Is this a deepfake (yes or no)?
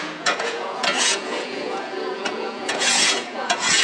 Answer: yes